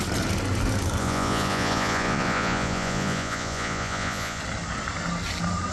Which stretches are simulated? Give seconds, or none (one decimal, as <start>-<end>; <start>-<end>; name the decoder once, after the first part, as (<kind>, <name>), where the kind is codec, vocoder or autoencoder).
1.0-4.4 (vocoder, Vocos)